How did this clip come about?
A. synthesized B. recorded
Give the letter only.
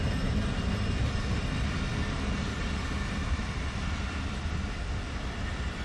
B